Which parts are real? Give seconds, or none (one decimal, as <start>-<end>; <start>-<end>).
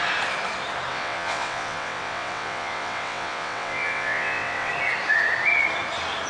0.0-0.9; 4.7-6.3